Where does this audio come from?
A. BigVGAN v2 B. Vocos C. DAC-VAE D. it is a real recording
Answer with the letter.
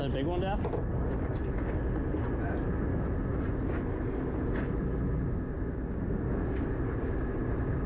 D